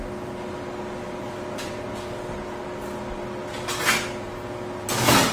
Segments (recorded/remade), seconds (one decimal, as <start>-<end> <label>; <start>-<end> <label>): 0.0-5.3 recorded